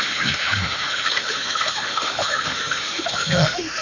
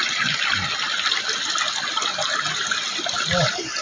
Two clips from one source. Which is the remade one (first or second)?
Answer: first